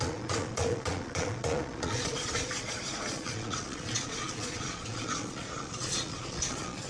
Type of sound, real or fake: fake